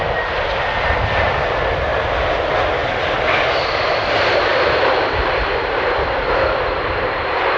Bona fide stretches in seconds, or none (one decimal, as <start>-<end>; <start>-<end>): 0.0-4.5